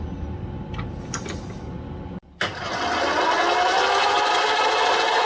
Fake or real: real